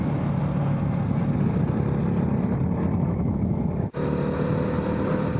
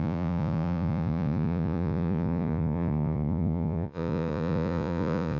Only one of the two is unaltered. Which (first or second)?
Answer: first